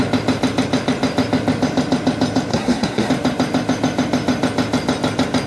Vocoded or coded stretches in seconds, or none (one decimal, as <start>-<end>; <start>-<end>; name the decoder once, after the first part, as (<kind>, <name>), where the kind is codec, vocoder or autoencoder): 2.5-3.1 (codec, SNAC)